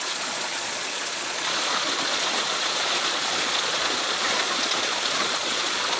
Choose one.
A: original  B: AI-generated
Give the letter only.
B